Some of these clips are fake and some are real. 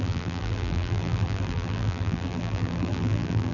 fake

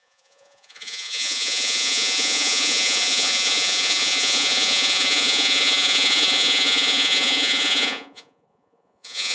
fake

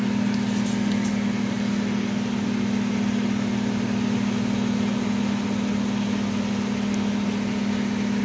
real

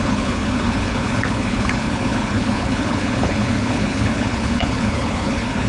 fake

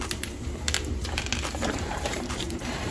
fake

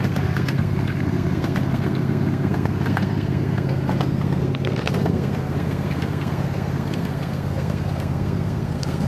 fake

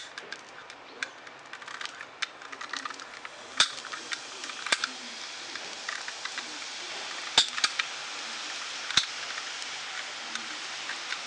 real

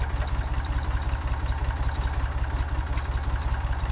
real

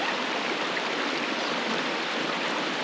real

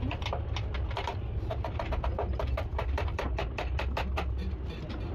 real